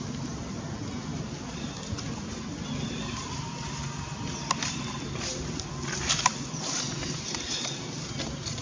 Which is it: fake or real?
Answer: real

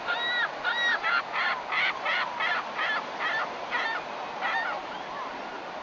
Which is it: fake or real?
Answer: real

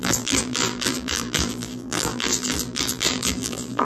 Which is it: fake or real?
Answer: fake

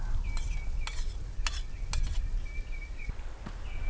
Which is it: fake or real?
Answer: real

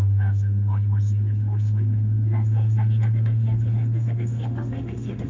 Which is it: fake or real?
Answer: fake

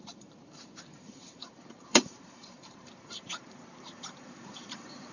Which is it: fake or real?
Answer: fake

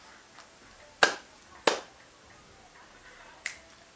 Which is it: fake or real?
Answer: real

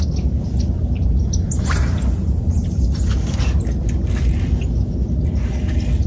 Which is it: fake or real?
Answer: real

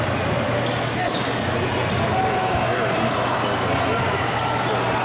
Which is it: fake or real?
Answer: real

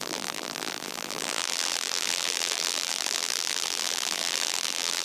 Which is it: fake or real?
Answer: fake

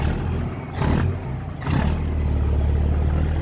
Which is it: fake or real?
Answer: real